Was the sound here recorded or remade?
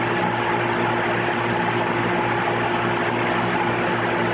recorded